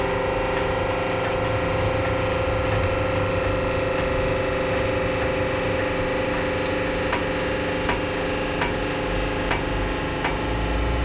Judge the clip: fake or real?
real